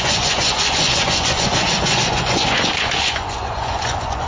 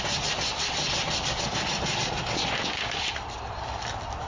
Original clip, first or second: second